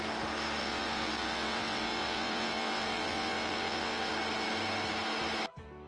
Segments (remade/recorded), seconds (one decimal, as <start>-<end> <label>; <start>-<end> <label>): 0.0-0.6 recorded; 0.6-4.1 remade; 4.1-5.9 recorded